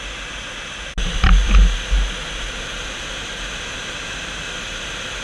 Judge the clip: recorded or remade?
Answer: recorded